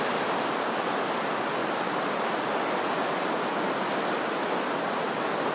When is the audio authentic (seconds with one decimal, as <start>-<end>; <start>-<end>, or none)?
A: 0.0-5.5